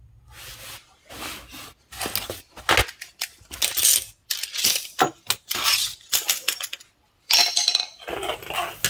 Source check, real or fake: real